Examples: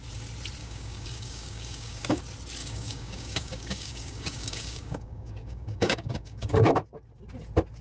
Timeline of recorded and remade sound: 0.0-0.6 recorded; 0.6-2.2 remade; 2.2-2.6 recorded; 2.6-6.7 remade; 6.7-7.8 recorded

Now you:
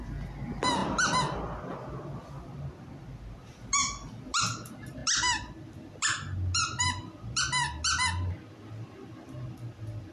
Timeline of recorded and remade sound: 0.0-10.1 recorded

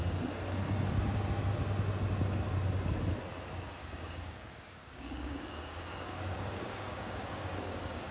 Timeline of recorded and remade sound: 0.0-3.8 recorded; 3.8-8.1 remade